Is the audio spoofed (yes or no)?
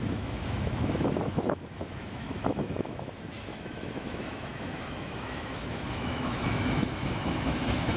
yes